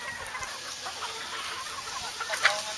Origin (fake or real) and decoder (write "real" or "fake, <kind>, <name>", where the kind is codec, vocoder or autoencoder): real